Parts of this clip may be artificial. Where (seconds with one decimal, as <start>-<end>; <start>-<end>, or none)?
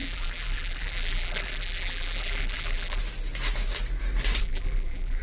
0.0-3.0; 4.4-5.2